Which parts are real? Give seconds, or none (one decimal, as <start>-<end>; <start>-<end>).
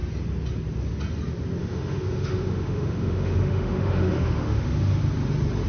0.0-1.6; 5.0-5.7